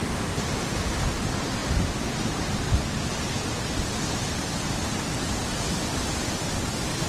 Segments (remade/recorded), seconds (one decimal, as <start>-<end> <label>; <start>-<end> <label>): 0.0-7.1 recorded